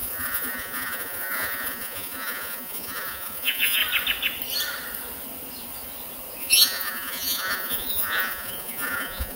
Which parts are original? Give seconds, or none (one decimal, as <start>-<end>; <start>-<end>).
3.8-6.4